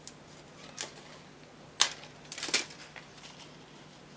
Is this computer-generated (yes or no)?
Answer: no